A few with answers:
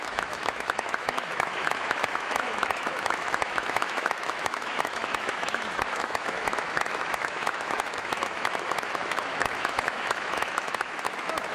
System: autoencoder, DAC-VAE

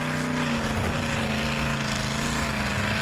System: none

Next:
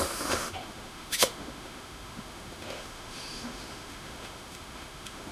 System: autoencoder, DAC-VAE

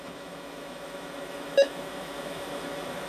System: autoencoder, DAC-VAE